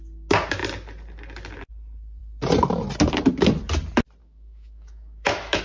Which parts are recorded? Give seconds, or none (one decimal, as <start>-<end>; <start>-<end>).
0.0-4.2